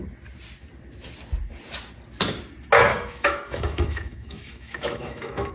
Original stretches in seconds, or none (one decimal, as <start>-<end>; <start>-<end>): 0.0-2.9